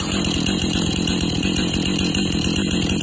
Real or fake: fake